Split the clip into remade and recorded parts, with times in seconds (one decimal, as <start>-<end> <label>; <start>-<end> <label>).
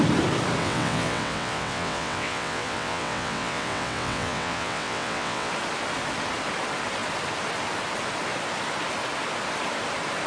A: 0.0-0.6 recorded; 0.6-5.5 remade; 5.5-10.3 recorded